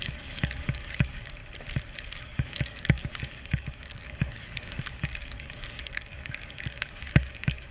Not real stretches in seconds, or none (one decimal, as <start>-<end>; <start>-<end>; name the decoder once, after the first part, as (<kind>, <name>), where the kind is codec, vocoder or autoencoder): 0.0-1.4 (codec, DAC); 2.2-7.7